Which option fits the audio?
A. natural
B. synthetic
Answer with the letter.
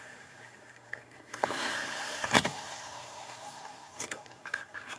B